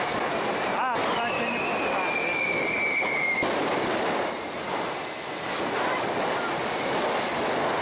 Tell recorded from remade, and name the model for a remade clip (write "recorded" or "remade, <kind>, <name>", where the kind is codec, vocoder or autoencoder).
recorded